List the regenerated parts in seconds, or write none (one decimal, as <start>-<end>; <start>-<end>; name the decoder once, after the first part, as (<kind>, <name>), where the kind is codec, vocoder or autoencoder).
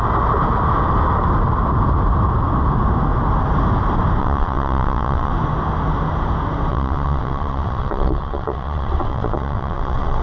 4.2-5.3 (vocoder, WaveNeXt); 6.7-10.2